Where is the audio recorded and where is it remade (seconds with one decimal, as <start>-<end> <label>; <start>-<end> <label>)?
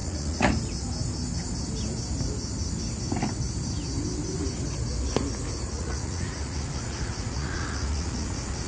0.0-0.5 remade; 0.5-5.7 recorded; 5.7-8.7 remade